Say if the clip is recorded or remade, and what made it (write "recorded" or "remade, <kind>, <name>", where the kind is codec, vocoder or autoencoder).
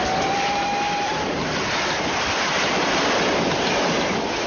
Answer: remade, vocoder, BigVGAN v2